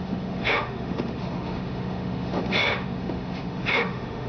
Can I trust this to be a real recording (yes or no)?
no